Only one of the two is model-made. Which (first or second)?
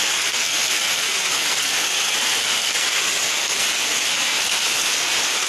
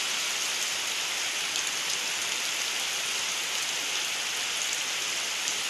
first